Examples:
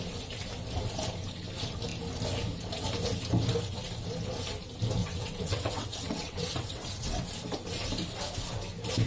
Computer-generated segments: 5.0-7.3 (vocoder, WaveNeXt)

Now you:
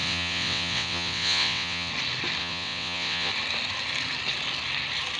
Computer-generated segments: 0.0-1.9 (vocoder, WaveNeXt); 2.4-3.3

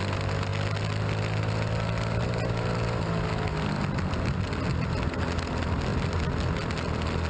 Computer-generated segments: none

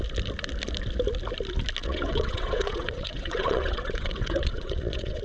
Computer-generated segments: 1.8-5.2 (vocoder, WaveNeXt)

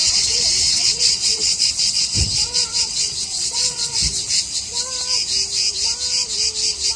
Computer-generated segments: 0.0-4.2 (vocoder, WaveNeXt)

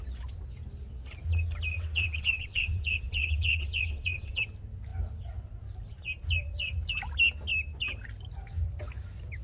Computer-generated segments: 1.7-4.4 (vocoder, WaveNeXt)